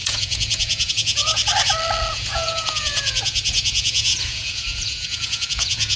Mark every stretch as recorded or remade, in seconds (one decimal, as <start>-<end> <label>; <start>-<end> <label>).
0.0-1.4 remade; 1.4-2.1 recorded; 2.1-6.0 remade